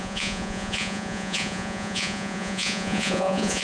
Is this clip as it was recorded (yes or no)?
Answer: no